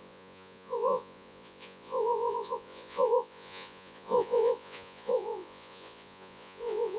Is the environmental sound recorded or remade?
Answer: remade